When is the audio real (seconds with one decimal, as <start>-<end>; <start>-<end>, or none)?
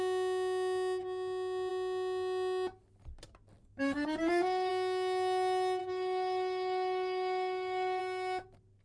0.0-3.6; 4.7-5.8; 8.0-8.8